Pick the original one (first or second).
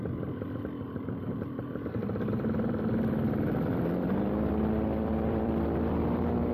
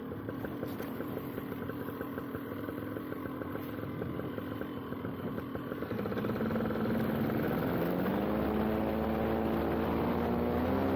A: second